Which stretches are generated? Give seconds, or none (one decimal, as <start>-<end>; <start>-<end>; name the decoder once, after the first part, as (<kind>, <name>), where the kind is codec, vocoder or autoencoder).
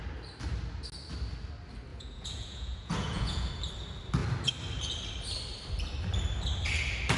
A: 1.9-3.5 (vocoder, Vocos)